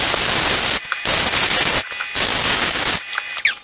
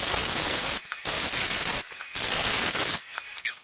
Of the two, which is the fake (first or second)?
second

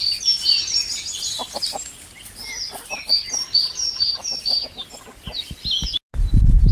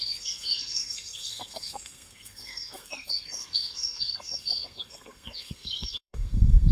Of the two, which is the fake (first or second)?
second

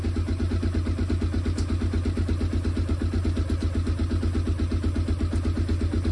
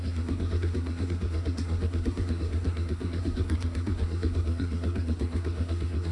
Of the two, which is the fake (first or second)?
second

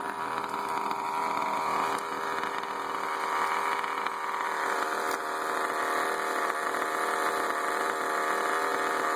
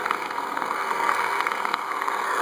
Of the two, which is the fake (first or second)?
second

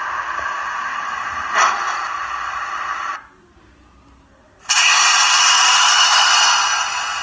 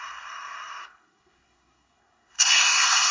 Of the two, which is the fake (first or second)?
second